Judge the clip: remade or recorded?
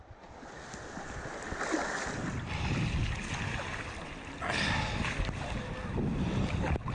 recorded